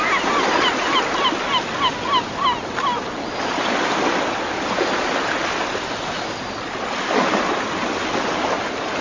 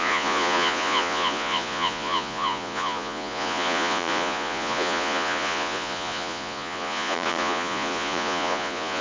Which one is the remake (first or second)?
second